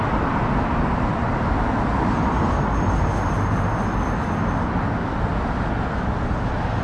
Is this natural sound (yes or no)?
yes